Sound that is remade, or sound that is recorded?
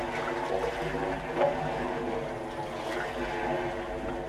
recorded